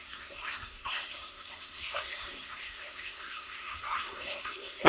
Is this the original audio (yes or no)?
no